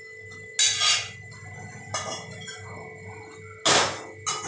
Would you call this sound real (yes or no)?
yes